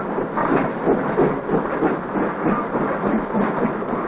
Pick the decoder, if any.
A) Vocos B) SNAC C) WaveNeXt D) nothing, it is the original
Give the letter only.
D